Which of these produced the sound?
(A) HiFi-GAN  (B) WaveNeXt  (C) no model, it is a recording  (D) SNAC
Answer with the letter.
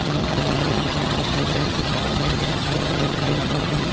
A